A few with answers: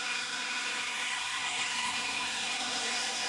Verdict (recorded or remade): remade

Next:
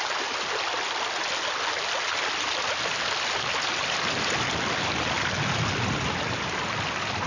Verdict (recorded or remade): recorded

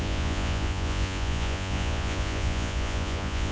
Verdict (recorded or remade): remade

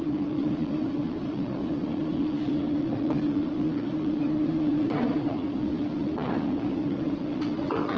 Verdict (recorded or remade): remade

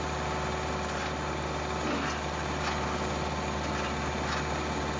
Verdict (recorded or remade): recorded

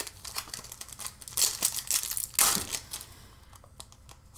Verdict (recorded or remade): recorded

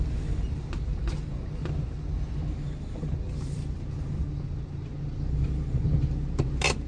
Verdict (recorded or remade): recorded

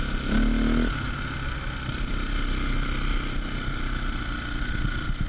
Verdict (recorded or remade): recorded